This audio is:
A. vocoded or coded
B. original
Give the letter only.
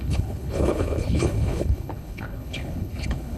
A